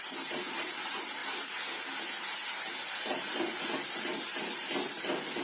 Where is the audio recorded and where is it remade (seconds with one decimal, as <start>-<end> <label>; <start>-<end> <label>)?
0.0-5.4 recorded